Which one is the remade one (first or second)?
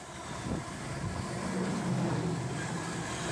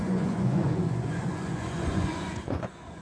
second